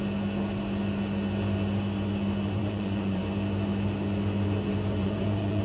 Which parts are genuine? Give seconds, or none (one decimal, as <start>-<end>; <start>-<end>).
0.0-2.6; 3.2-5.0